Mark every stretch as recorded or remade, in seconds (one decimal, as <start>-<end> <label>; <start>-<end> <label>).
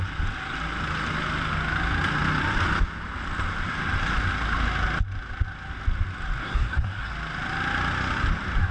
0.0-6.4 recorded; 6.4-7.1 remade; 7.1-8.7 recorded